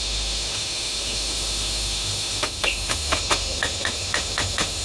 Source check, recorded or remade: remade